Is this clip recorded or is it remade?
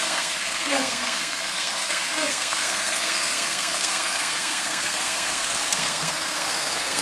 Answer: remade